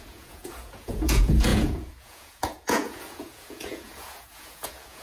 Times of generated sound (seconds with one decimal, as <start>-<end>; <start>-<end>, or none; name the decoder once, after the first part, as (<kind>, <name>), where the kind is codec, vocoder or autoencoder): 0.0-5.0 (vocoder, Vocos)